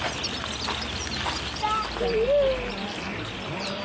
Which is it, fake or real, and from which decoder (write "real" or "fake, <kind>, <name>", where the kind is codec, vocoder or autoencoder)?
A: real